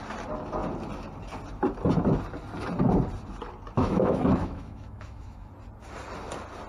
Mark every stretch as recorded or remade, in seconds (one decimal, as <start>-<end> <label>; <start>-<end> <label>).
0.0-3.8 recorded; 3.8-5.5 remade; 5.5-6.7 recorded